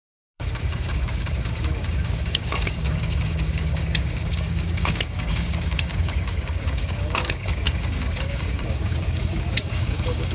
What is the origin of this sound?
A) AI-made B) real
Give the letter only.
A